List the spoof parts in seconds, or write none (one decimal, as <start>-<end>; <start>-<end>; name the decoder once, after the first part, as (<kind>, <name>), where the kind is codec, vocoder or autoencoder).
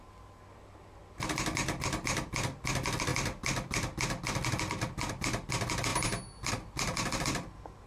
none